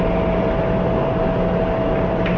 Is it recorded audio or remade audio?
recorded